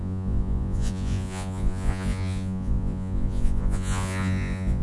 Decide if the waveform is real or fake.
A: fake